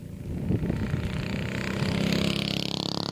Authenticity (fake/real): real